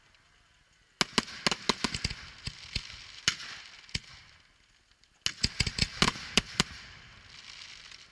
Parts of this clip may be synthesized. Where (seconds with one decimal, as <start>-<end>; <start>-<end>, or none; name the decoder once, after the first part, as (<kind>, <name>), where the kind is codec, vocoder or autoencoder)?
6.1-7.2 (vocoder, BigVGAN v2)

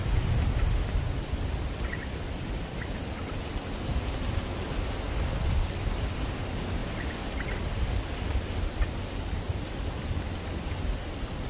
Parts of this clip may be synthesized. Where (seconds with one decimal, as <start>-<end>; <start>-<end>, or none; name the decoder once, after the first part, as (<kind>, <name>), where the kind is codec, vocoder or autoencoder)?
0.0-1.0 (vocoder, BigVGAN v2)

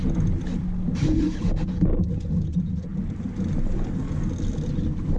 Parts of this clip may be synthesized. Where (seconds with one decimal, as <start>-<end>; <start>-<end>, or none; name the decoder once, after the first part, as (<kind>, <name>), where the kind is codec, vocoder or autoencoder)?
none

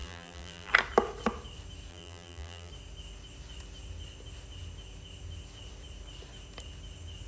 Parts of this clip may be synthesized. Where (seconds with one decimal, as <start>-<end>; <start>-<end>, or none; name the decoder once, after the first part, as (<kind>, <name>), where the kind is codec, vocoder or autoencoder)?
0.0-0.7 (vocoder, BigVGAN v2); 1.9-2.7